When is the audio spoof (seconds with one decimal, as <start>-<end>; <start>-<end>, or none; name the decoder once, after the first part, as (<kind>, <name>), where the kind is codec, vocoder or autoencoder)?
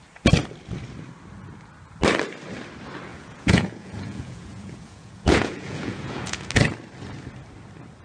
3.1-6.5 (vocoder, Vocos)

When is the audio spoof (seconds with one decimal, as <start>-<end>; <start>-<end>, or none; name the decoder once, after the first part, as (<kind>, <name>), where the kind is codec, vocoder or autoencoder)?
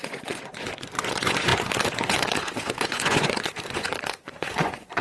0.0-5.0 (vocoder, Vocos)